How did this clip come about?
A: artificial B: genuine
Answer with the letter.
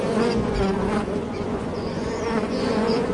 A